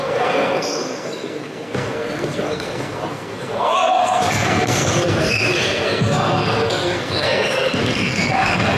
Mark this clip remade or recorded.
remade